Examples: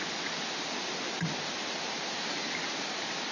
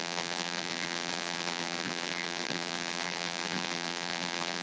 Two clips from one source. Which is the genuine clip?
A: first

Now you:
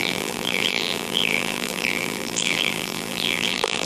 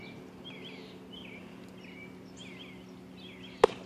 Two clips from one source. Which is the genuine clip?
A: second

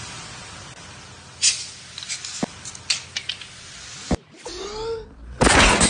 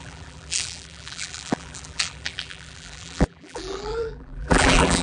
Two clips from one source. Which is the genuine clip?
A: first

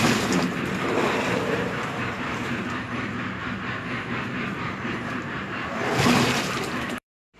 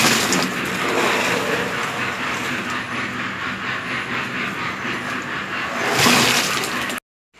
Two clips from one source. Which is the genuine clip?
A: second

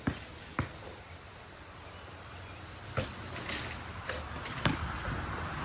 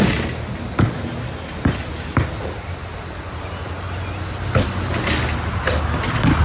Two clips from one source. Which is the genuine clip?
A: second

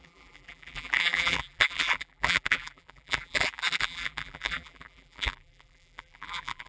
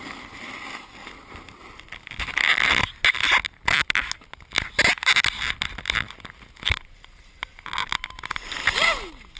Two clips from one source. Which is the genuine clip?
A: second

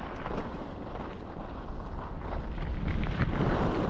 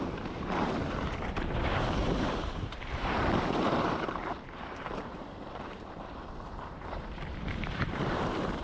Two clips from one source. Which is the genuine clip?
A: first